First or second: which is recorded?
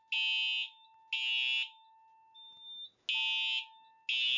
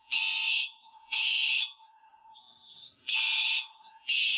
first